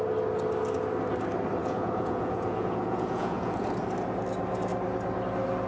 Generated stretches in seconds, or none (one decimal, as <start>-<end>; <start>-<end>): 1.6-3.6